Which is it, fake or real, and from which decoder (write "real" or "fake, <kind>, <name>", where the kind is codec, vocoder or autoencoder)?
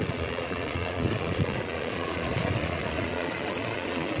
fake, vocoder, Vocos